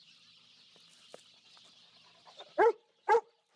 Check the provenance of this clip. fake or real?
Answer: real